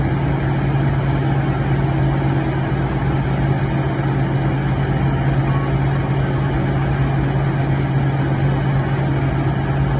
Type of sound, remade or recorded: recorded